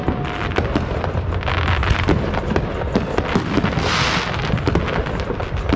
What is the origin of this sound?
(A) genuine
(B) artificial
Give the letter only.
A